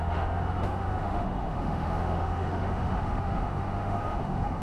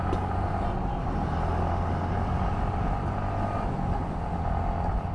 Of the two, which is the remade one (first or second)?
first